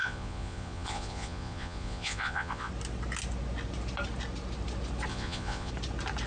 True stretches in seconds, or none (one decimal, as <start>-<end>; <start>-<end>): 2.7-5.1; 5.7-6.3